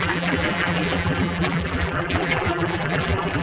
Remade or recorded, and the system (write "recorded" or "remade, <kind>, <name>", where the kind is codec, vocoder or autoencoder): remade, vocoder, BigVGAN v2